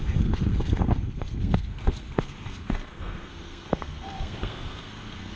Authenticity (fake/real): fake